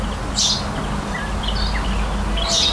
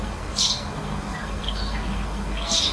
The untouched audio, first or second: first